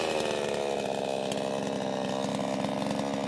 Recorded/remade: recorded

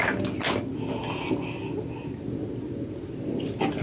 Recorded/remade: recorded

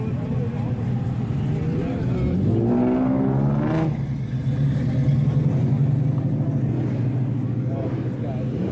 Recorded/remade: recorded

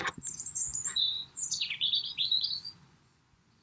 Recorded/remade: remade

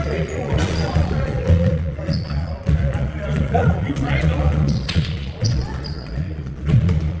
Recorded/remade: remade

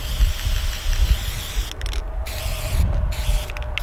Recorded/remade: recorded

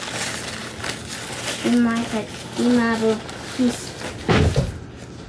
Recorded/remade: recorded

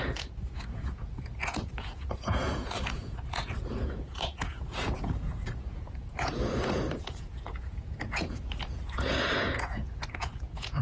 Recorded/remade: remade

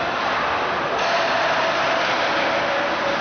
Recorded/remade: recorded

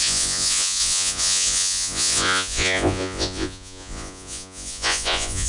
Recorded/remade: remade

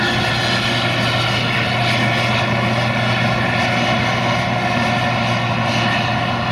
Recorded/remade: recorded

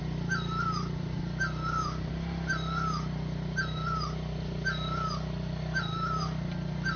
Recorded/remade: recorded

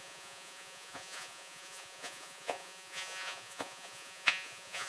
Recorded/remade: remade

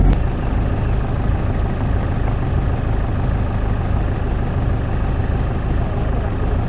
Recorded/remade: recorded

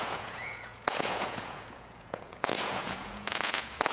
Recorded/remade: remade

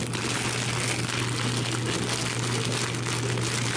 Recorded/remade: recorded